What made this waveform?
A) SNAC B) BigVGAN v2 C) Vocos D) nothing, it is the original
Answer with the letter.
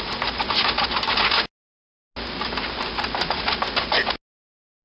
D